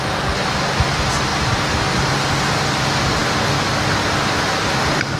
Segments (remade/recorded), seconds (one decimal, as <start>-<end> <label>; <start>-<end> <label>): 0.0-5.2 recorded